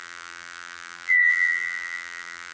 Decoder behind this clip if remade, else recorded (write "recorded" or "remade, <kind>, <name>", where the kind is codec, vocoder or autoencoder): remade, vocoder, BigVGAN v2